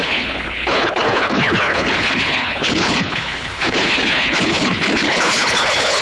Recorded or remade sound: remade